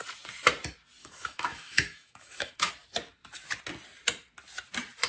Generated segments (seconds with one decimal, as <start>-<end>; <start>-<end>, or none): 1.0-2.7